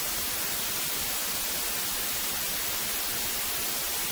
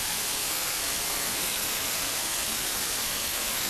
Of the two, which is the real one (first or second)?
first